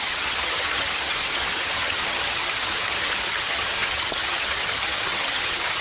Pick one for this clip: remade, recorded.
remade